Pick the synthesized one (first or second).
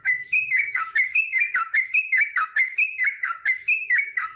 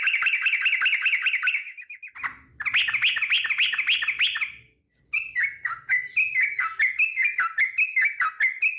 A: first